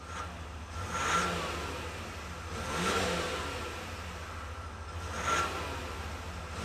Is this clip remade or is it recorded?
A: recorded